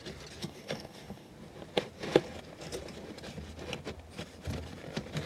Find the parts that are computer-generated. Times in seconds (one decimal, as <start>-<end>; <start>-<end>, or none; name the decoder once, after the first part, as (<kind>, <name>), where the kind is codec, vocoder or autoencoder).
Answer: 0.4-1.3 (codec, DAC)